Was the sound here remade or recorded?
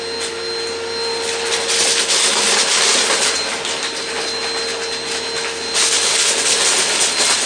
recorded